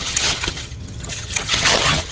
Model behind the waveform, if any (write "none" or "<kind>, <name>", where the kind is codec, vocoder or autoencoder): vocoder, HiFi-GAN